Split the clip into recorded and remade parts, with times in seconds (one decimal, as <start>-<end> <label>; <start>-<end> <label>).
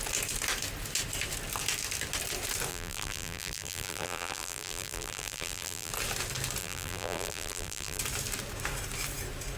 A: 0.0-2.7 recorded; 2.7-5.9 remade; 5.9-6.6 recorded; 6.6-8.0 remade; 8.0-9.6 recorded